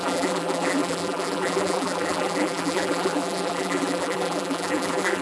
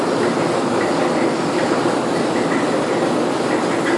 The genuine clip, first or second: second